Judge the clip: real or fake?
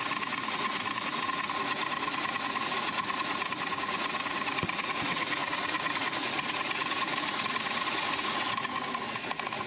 fake